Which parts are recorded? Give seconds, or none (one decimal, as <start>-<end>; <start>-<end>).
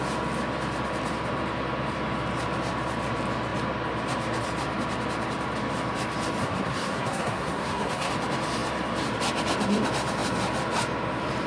0.0-6.4; 8.1-11.5